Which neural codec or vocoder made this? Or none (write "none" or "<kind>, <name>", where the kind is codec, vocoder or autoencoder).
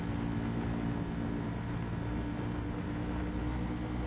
none